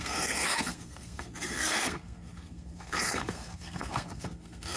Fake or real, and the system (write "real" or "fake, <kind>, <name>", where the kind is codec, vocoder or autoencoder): fake, codec, SNAC